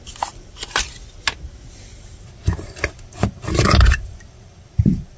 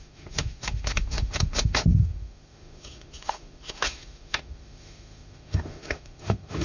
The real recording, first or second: first